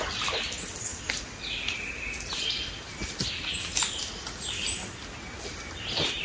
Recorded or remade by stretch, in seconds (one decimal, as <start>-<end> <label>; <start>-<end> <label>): 0.0-6.2 recorded